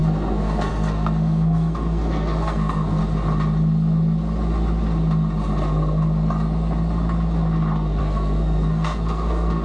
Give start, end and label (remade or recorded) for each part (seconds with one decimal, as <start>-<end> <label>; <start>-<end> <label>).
0.0-3.0 remade; 3.0-8.0 recorded; 8.0-9.6 remade